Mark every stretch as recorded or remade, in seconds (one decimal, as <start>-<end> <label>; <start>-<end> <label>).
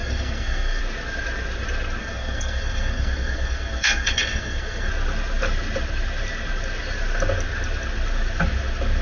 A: 0.0-0.8 remade; 0.8-2.0 recorded; 2.0-4.9 remade; 4.9-9.0 recorded